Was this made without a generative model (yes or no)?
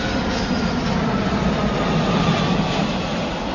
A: yes